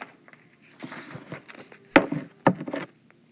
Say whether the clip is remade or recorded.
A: recorded